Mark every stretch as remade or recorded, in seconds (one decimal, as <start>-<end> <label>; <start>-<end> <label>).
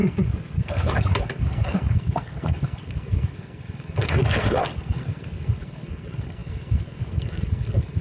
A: 0.0-8.0 remade